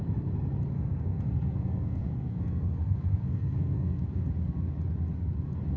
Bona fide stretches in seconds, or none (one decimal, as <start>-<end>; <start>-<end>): 0.0-0.7; 4.2-5.8